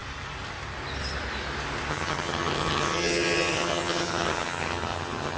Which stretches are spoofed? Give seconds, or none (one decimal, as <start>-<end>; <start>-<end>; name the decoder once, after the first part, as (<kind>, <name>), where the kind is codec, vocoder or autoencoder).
1.9-5.4 (vocoder, HiFi-GAN)